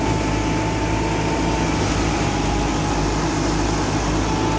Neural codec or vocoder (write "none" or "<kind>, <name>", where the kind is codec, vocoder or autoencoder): none